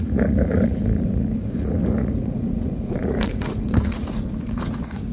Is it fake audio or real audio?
fake